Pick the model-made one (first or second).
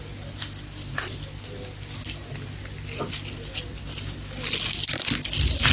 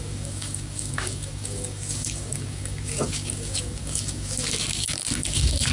second